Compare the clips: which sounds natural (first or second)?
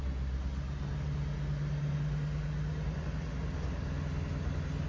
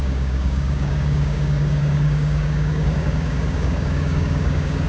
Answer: first